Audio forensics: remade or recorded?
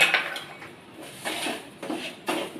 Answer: recorded